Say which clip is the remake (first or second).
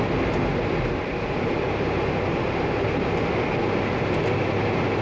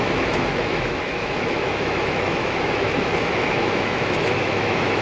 second